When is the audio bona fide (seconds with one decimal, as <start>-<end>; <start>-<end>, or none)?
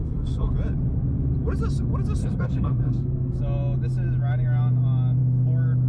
0.5-2.2; 3.4-5.9